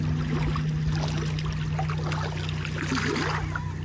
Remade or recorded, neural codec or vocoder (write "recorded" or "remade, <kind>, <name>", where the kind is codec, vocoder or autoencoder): recorded